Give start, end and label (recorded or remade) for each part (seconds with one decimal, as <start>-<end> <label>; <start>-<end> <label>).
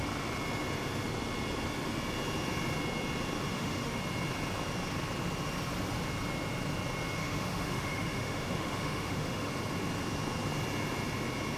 0.0-3.5 recorded; 3.5-4.0 remade; 4.0-7.2 recorded; 7.2-9.5 remade; 9.5-11.6 recorded